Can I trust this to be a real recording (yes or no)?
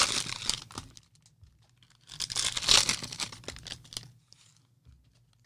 yes